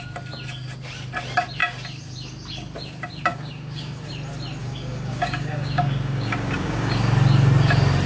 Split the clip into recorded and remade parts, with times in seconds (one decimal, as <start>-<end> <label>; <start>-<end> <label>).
0.0-3.3 recorded; 3.3-4.1 remade; 4.1-4.6 recorded; 4.6-6.9 remade; 6.9-8.1 recorded